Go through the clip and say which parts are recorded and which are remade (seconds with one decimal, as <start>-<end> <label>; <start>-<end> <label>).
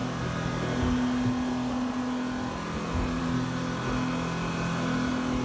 0.0-5.4 recorded